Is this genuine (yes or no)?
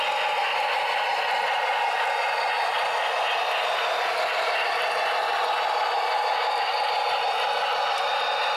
yes